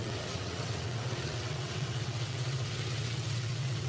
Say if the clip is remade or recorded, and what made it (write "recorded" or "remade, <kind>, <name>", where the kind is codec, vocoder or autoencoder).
remade, vocoder, WaveNeXt